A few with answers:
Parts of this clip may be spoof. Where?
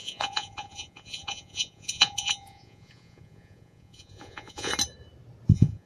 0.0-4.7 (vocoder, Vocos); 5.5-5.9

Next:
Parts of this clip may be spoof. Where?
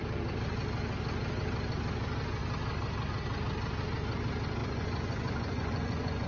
4.6-6.3 (vocoder, Vocos)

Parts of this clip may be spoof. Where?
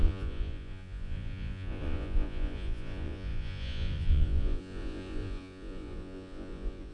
0.0-6.9 (vocoder, Vocos)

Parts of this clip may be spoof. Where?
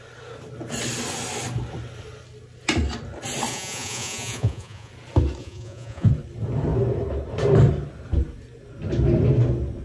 3.5-4.9 (vocoder, Vocos); 5.4-6.1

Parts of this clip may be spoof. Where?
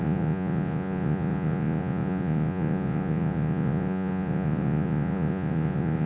0.0-6.1 (vocoder, Vocos)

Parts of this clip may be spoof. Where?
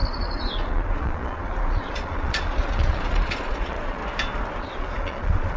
0.0-4.0 (vocoder, Vocos); 4.6-5.6